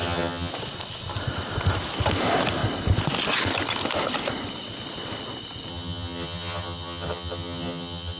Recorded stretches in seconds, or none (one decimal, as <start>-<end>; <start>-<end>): 0.5-5.7